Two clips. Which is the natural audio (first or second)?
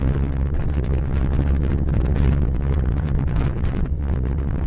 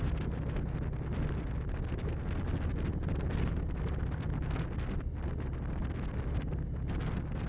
second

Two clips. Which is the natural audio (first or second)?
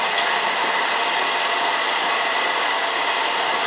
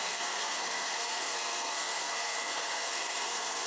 first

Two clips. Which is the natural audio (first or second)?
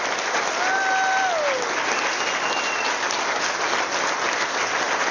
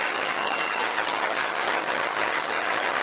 first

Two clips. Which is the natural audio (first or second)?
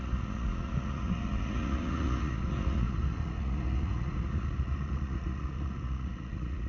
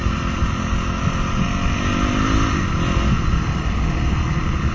second